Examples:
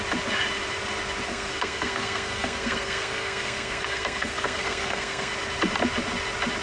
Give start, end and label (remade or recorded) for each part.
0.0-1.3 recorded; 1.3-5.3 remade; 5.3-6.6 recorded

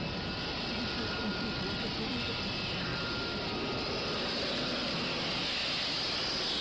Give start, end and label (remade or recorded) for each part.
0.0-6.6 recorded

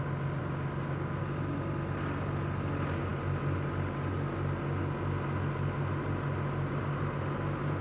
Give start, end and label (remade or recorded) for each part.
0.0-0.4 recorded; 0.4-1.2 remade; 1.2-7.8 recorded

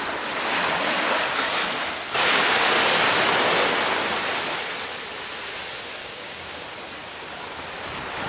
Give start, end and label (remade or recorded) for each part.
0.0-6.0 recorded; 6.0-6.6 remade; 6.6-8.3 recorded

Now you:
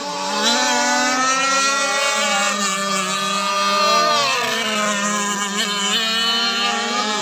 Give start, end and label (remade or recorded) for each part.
0.0-7.2 recorded

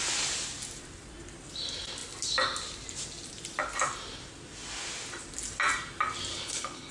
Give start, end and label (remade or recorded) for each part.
0.0-6.3 recorded; 6.3-6.9 remade